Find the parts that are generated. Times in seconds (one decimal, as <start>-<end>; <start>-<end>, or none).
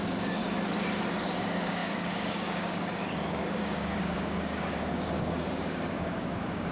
0.0-0.4; 1.4-6.7